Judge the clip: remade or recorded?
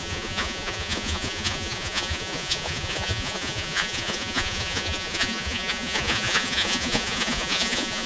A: remade